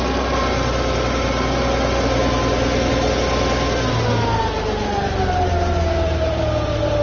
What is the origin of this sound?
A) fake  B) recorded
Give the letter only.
B